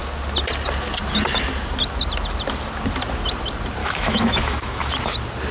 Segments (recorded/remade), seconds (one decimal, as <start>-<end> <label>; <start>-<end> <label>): 0.0-3.8 recorded; 3.8-4.9 remade; 4.9-5.5 recorded